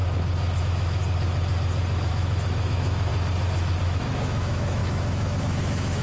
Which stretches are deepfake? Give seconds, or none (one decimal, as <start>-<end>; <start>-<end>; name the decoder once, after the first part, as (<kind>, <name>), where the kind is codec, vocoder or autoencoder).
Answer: 0.6-1.0 (autoencoder, DAC-VAE); 2.1-3.1; 3.8-6.0

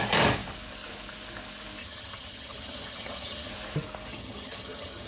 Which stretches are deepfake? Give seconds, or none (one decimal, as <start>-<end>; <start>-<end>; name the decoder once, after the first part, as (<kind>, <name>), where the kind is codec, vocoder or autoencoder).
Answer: 1.8-3.5 (vocoder, HiFi-GAN); 4.1-5.1

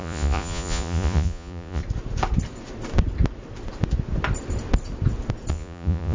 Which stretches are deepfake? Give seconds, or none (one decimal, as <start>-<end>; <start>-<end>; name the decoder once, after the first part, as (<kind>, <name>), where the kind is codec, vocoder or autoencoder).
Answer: 0.0-1.8 (vocoder, Vocos); 5.5-6.1